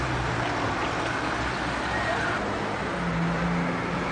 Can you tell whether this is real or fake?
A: real